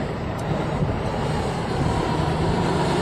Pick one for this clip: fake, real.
fake